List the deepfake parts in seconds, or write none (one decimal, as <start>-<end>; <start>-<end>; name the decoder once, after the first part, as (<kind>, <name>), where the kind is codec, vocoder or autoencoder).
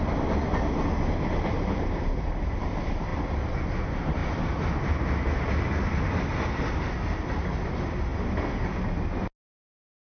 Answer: none